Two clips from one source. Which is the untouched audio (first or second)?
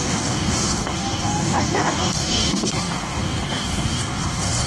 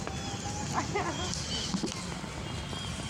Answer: second